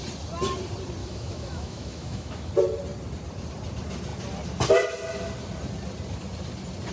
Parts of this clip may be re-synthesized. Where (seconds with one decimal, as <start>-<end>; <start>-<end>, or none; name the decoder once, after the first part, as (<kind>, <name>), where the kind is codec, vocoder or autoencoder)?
1.0-2.5 (autoencoder, DAC-VAE)